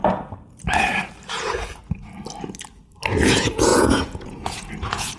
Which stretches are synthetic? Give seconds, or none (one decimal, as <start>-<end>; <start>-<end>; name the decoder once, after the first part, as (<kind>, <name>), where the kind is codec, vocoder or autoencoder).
1.3-1.8 (vocoder, Vocos); 3.1-5.2